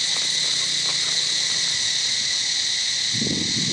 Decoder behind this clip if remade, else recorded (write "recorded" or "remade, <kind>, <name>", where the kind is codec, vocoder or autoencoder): recorded